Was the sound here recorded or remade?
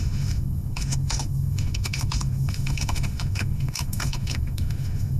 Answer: remade